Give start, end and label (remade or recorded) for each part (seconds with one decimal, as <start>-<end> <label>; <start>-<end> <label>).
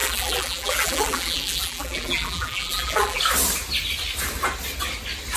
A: 0.0-3.2 remade; 3.2-5.4 recorded